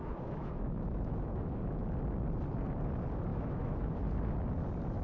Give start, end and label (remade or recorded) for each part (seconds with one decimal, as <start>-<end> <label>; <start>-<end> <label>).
0.0-1.5 remade; 1.5-3.3 recorded; 3.3-4.0 remade; 4.0-5.0 recorded